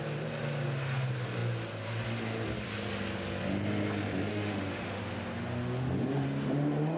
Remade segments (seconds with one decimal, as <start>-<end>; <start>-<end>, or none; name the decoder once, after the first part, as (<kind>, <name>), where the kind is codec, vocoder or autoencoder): 4.3-5.0 (autoencoder, DAC-VAE)